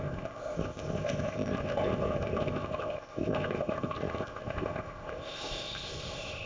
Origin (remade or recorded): remade